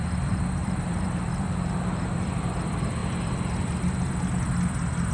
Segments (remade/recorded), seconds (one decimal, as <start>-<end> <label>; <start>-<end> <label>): 0.0-0.6 recorded; 0.6-2.2 remade; 2.2-5.1 recorded

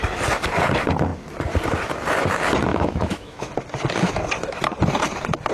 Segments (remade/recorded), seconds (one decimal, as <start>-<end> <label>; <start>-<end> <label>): 0.0-2.7 recorded; 2.7-3.5 remade; 3.5-5.5 recorded

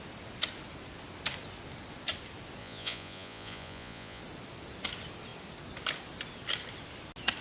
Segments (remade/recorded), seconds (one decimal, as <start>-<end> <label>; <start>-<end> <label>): 0.0-2.6 recorded; 2.6-4.2 remade; 4.2-7.4 recorded

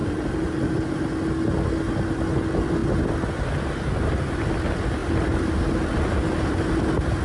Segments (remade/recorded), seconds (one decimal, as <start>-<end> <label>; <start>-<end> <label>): 0.0-1.0 remade; 1.0-5.0 recorded; 5.0-5.6 remade; 5.6-7.2 recorded